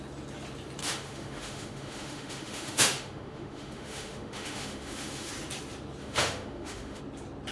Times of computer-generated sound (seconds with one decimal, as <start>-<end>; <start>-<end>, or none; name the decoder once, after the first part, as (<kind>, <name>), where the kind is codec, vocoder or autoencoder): 0.8-5.3 (autoencoder, DAC-VAE); 6.0-7.0